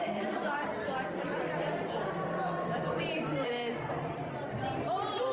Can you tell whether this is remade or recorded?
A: remade